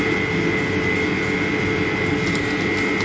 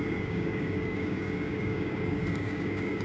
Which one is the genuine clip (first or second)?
first